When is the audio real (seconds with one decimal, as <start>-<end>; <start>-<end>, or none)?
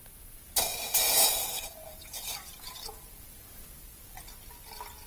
0.0-0.7; 3.8-5.1